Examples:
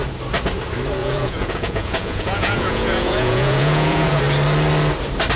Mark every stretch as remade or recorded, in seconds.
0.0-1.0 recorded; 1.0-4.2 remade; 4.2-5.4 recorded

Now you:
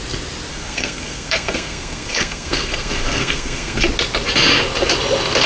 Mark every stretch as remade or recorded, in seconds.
0.0-0.5 recorded; 0.5-3.8 remade; 3.8-5.5 recorded

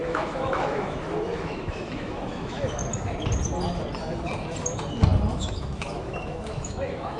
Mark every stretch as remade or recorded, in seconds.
0.0-2.8 remade; 2.8-5.3 recorded; 5.3-7.2 remade

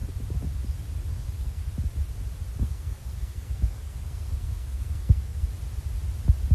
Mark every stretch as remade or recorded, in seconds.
0.0-1.1 recorded; 1.1-1.6 remade; 1.6-2.6 recorded; 2.6-5.5 remade; 5.5-6.5 recorded